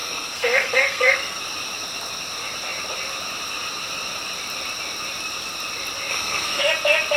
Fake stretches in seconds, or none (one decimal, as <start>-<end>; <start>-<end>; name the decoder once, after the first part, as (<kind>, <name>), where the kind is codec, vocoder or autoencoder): 0.0-1.4 (codec, SNAC); 6.1-6.6